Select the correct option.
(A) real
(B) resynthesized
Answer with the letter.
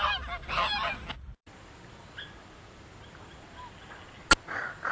A